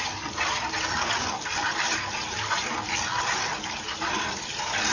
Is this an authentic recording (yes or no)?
yes